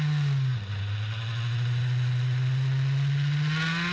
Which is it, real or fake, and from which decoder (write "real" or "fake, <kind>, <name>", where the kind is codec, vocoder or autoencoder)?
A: real